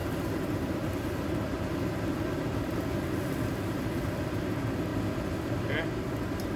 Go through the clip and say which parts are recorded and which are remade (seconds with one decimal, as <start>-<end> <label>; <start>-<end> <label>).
0.0-4.0 remade; 4.0-6.6 recorded